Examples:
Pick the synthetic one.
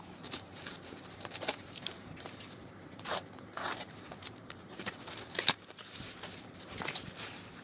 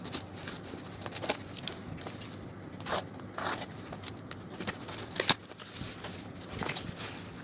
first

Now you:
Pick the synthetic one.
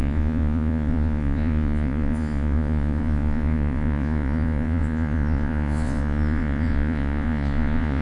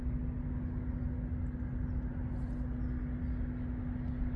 first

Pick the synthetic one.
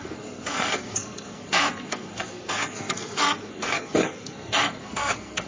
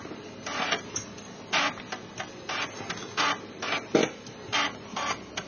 first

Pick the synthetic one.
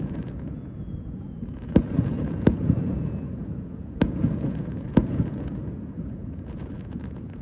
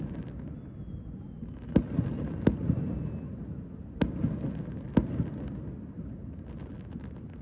first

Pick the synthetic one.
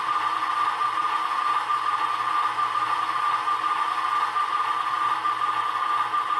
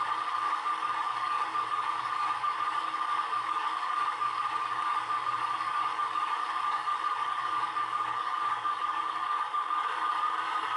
second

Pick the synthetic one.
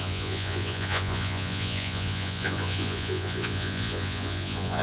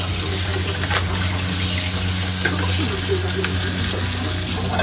first